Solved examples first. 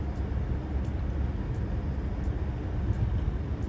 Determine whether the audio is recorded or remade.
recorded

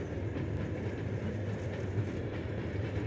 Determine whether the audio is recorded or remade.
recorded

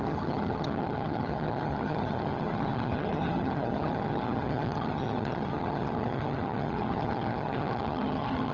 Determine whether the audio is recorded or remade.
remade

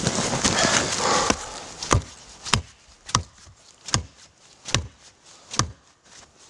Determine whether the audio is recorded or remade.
recorded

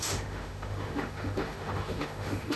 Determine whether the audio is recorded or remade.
remade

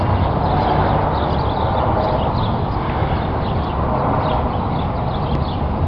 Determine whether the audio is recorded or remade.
recorded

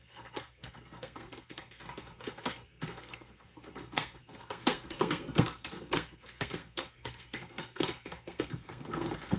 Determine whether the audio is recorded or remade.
remade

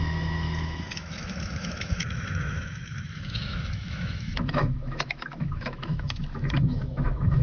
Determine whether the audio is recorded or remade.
remade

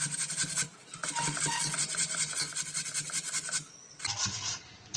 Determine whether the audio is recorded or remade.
recorded